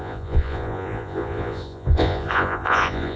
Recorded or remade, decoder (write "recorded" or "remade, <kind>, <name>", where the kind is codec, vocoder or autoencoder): remade, vocoder, Vocos